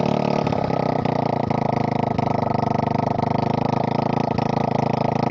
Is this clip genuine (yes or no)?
yes